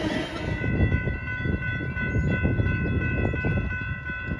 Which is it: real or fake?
real